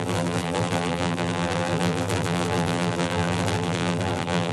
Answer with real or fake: fake